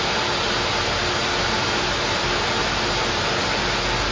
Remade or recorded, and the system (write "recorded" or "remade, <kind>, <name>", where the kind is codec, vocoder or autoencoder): recorded